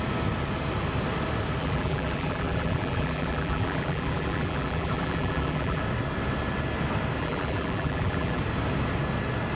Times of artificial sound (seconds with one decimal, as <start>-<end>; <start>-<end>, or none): 1.6-5.8; 7.2-8.4